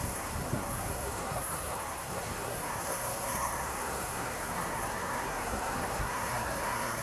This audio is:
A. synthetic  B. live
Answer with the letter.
A